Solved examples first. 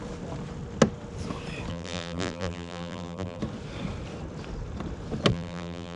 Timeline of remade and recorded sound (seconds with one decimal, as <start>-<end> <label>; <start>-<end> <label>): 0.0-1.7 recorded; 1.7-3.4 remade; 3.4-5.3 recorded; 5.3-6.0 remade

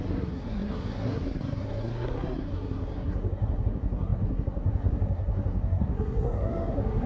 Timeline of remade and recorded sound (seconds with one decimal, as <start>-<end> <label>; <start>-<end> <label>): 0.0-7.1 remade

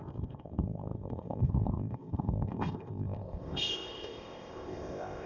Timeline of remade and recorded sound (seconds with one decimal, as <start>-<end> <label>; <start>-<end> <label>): 0.0-5.3 remade

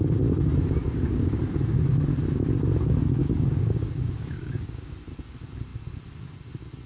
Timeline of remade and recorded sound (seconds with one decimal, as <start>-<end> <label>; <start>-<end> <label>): 0.0-0.8 recorded; 0.8-1.4 remade; 1.4-3.2 recorded; 3.2-4.9 remade; 4.9-6.9 recorded

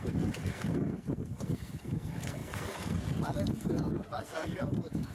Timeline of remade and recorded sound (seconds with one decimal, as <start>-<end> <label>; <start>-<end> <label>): 0.0-5.1 remade

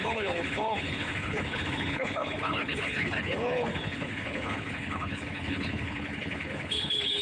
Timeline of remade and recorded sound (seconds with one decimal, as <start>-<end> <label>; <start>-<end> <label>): 0.0-7.2 remade

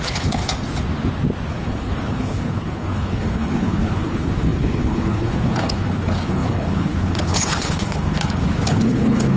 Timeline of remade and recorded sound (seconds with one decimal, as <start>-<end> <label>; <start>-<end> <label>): 0.0-0.4 remade; 0.4-1.5 recorded; 1.5-9.4 remade